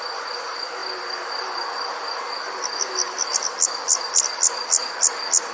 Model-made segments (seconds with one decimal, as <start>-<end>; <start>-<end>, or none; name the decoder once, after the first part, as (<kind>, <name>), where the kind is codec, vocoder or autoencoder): none